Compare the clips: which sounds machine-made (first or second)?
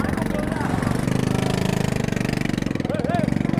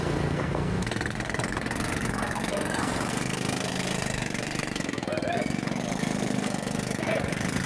second